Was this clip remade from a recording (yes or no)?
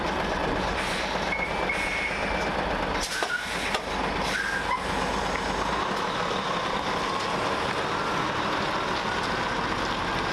no